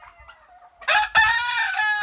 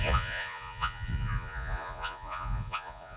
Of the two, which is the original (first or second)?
first